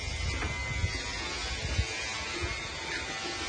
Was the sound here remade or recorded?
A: recorded